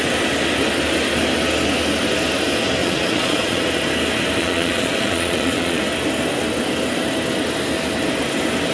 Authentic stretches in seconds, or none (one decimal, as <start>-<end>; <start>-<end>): 0.0-2.8; 3.6-4.4; 5.8-8.7